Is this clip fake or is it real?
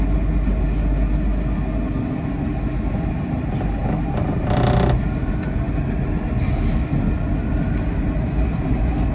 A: real